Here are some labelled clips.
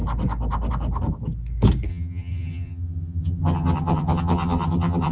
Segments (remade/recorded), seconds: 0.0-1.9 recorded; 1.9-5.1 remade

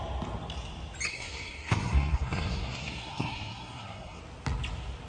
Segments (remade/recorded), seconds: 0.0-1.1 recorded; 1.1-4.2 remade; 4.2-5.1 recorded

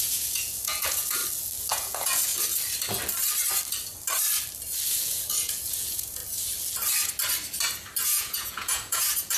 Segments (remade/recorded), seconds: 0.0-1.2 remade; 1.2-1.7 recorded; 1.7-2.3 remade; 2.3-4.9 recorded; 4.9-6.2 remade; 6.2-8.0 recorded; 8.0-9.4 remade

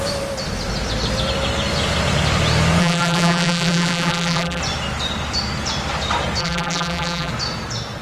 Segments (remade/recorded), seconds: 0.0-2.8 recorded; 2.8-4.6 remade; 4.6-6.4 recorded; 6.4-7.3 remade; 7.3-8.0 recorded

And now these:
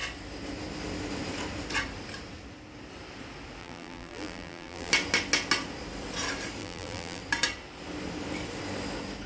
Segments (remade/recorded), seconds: 0.0-3.6 recorded; 3.6-4.9 remade; 4.9-6.6 recorded; 6.6-7.2 remade; 7.2-9.3 recorded

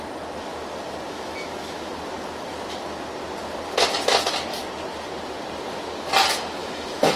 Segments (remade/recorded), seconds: 0.0-1.1 recorded; 1.1-1.9 remade; 1.9-6.6 recorded; 6.6-7.2 remade